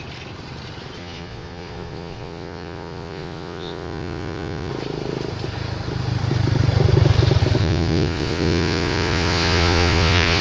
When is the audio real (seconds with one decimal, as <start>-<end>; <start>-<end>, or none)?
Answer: 0.0-1.0; 4.7-7.6